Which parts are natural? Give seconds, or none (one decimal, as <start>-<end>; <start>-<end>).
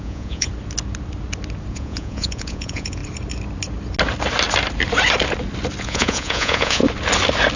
0.5-1.7; 3.0-5.8; 6.8-7.6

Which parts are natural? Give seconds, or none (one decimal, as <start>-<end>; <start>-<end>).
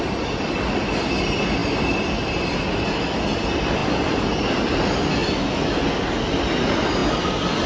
0.0-7.7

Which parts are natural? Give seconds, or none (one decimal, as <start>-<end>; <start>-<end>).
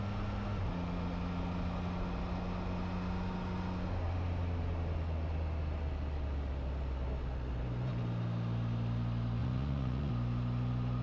0.0-9.4; 10.1-11.0